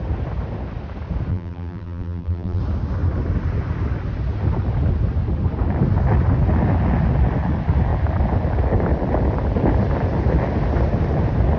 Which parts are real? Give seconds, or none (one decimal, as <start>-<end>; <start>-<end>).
0.0-1.3; 2.6-11.6